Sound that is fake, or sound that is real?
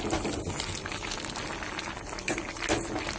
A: real